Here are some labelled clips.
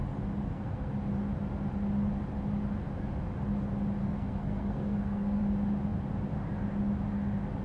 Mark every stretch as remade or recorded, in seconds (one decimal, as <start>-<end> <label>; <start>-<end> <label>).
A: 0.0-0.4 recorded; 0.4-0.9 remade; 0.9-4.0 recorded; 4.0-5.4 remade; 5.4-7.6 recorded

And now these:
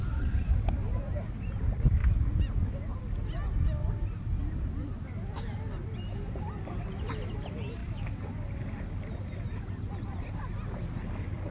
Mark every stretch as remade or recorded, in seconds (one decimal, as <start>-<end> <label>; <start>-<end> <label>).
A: 0.0-11.5 recorded

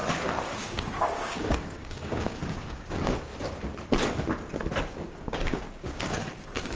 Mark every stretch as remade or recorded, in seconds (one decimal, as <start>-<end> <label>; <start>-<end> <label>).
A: 0.0-0.6 recorded; 0.6-3.3 remade; 3.3-4.8 recorded; 4.8-6.8 remade

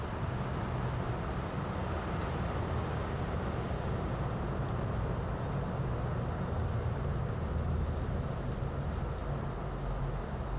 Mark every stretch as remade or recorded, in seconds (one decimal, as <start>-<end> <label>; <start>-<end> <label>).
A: 0.0-10.6 recorded

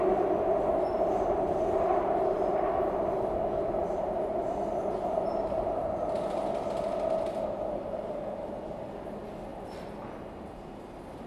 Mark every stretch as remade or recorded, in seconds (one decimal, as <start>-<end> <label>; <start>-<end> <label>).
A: 0.0-11.3 recorded

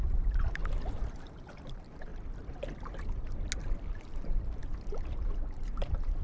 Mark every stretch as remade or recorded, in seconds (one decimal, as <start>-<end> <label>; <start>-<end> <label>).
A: 0.0-0.6 remade; 0.6-1.1 recorded; 1.1-2.1 remade; 2.1-3.9 recorded; 3.9-4.6 remade; 4.6-5.1 recorded; 5.1-6.2 remade

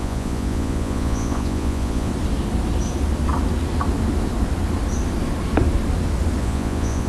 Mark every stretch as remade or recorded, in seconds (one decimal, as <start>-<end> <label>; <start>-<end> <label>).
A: 0.0-2.1 remade; 2.1-6.4 recorded; 6.4-7.1 remade